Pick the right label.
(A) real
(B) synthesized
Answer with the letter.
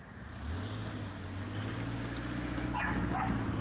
A